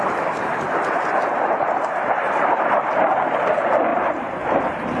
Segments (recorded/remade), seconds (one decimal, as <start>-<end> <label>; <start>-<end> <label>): 0.0-5.0 recorded